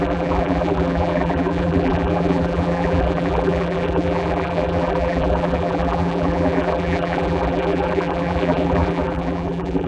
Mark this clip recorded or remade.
remade